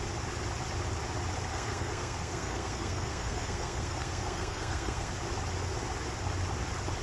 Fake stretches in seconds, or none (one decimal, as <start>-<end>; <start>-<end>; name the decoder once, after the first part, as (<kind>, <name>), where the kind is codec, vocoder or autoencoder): 1.5-5.1 (codec, SNAC)